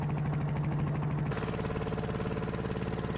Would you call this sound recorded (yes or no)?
yes